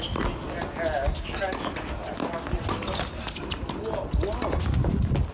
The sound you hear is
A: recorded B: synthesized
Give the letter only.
A